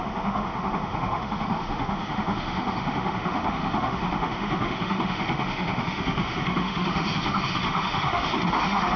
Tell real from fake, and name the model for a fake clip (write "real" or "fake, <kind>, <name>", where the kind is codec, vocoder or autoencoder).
fake, autoencoder, DAC-VAE